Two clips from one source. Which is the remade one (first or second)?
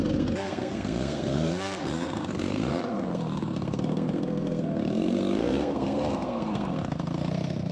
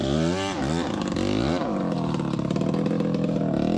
first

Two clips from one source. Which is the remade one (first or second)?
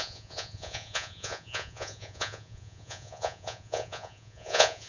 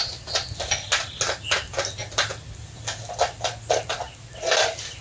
first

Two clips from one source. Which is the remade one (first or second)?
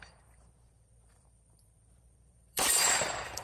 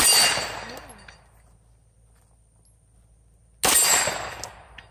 first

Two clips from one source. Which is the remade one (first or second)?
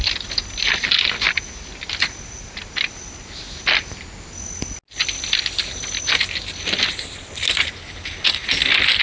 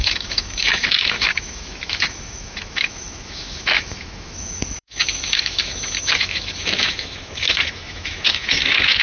second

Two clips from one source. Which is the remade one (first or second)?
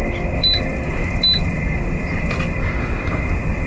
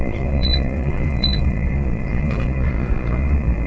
second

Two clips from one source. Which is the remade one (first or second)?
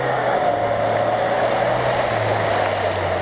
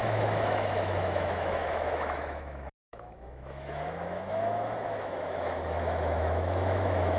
second